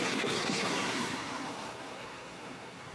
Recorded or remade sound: remade